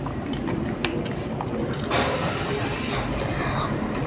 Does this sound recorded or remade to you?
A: recorded